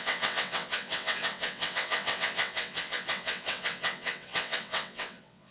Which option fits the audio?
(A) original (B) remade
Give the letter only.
B